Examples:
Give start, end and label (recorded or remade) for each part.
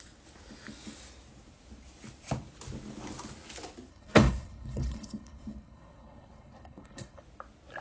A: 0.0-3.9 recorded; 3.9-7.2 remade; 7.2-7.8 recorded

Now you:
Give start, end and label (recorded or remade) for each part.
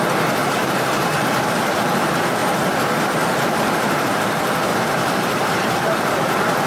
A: 0.0-0.4 recorded; 0.4-1.8 remade; 1.8-4.7 recorded; 4.7-5.8 remade; 5.8-6.7 recorded